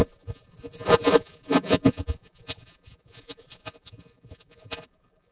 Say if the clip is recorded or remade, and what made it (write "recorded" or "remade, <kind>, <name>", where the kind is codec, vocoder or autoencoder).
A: remade, vocoder, Vocos